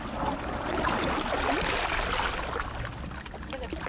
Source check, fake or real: real